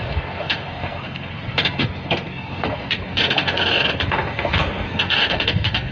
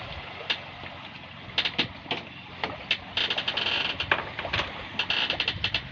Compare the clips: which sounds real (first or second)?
second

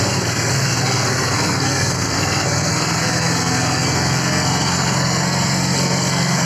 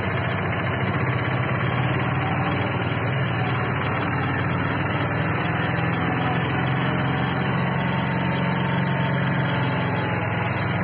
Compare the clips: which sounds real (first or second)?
second